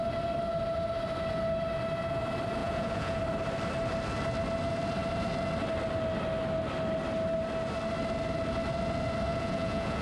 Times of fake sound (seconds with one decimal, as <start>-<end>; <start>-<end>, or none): 2.6-3.2; 9.3-10.0